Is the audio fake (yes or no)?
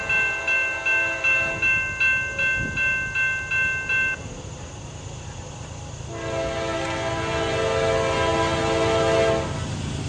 no